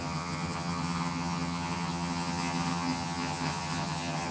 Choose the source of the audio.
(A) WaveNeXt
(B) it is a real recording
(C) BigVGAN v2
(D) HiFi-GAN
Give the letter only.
D